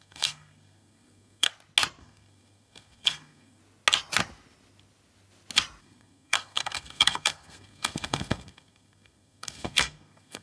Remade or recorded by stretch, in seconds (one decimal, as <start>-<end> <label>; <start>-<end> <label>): 0.0-1.5 remade; 1.5-2.0 recorded; 2.0-3.6 remade; 3.6-5.8 recorded; 5.8-10.4 remade